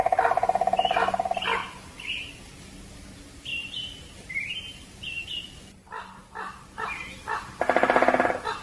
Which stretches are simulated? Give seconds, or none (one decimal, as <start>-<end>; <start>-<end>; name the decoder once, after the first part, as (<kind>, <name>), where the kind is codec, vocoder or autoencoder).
3.5-4.5 (vocoder, BigVGAN v2)